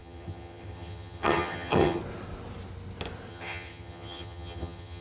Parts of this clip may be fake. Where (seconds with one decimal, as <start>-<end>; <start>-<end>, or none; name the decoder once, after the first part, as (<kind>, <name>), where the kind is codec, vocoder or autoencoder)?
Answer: 0.0-2.0 (vocoder, HiFi-GAN); 3.3-5.0